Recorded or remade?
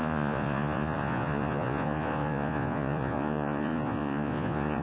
remade